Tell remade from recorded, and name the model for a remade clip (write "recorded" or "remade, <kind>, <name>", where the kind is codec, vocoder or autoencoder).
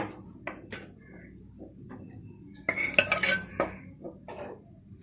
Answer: recorded